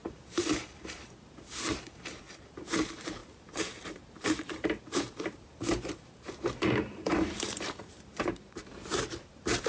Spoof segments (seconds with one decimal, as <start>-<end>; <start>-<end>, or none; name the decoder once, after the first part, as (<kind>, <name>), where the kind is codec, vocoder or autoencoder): 0.0-9.7 (vocoder, BigVGAN v2)